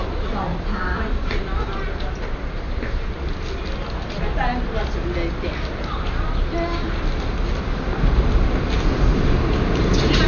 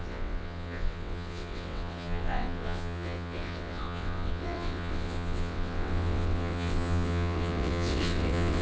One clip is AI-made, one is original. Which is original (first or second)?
first